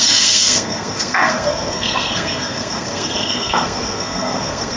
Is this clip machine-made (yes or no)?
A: yes